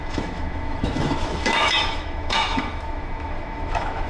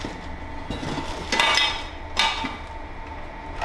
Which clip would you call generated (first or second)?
first